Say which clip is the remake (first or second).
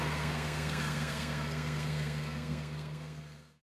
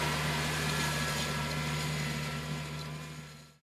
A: first